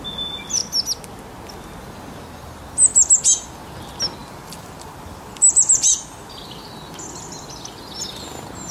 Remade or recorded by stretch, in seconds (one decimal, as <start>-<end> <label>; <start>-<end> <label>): 0.0-4.2 recorded; 4.2-6.7 remade; 6.7-8.7 recorded